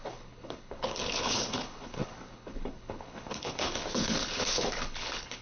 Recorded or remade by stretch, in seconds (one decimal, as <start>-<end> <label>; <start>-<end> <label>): 0.0-5.4 remade